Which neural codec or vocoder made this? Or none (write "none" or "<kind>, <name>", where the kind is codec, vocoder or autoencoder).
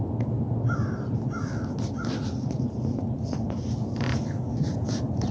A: none